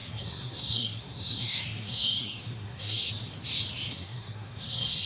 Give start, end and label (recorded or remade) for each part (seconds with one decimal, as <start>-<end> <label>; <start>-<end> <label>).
0.0-3.1 remade; 3.1-3.9 recorded; 3.9-5.1 remade